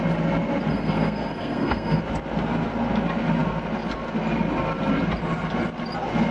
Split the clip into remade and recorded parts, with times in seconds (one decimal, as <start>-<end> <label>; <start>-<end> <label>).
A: 0.0-0.7 recorded; 0.7-2.0 remade; 2.0-6.3 recorded